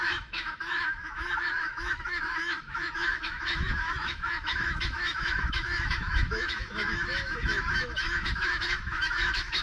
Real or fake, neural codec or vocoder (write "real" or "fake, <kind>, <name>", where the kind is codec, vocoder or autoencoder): fake, autoencoder, DAC-VAE